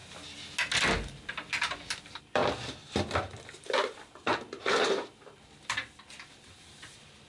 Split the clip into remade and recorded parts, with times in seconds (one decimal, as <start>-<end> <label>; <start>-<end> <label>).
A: 0.0-2.0 recorded; 2.0-2.4 remade; 2.4-6.8 recorded; 6.8-7.3 remade